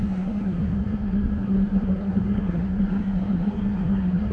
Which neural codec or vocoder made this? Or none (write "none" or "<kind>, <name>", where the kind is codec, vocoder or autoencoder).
codec, SNAC